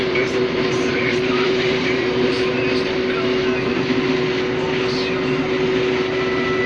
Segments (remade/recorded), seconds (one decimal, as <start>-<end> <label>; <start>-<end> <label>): 0.0-2.3 remade; 2.3-6.7 recorded